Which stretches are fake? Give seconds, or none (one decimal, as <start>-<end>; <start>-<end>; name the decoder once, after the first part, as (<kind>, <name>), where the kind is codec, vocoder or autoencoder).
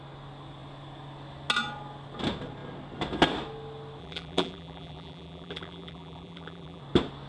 4.0-6.8 (vocoder, BigVGAN v2)